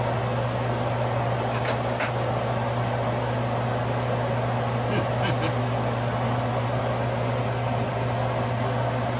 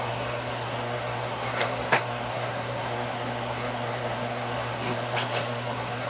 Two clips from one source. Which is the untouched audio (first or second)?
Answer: first